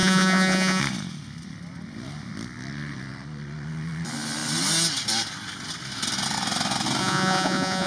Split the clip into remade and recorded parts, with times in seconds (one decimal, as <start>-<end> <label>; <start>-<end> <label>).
0.0-0.8 remade; 0.8-7.0 recorded; 7.0-7.9 remade